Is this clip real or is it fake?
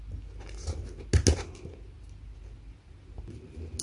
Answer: real